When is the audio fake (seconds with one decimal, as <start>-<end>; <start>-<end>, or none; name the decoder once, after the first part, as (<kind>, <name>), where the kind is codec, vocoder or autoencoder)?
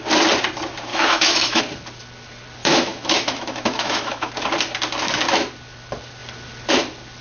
0.9-1.6 (autoencoder, DAC-VAE); 2.6-4.3